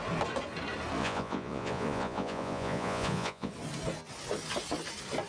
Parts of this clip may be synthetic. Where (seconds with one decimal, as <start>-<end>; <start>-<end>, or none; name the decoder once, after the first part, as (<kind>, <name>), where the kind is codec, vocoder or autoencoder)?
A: 1.0-3.5 (vocoder, Vocos)